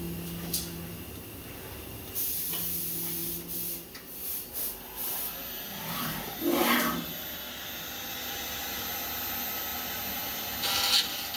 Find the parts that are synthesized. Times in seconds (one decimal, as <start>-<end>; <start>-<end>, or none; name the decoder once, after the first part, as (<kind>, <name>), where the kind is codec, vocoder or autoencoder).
none